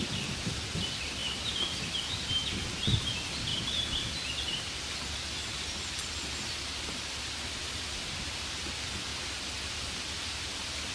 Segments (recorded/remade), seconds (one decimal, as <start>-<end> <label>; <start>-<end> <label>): 0.0-3.5 remade; 3.5-7.6 recorded; 7.6-9.1 remade; 9.1-9.7 recorded; 9.7-10.9 remade